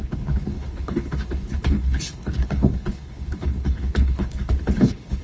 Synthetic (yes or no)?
yes